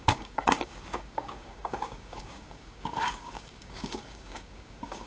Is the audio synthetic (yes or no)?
yes